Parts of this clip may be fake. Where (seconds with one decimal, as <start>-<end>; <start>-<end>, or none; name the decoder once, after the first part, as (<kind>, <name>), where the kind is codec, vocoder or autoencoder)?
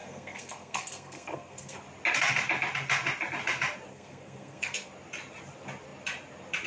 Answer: 0.0-1.8 (codec, SNAC); 3.9-4.9